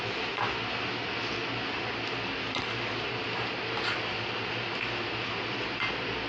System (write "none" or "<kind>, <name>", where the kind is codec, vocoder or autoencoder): none